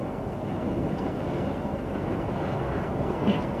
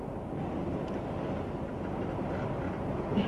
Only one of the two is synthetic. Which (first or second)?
first